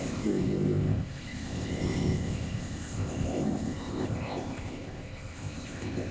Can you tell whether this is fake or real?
fake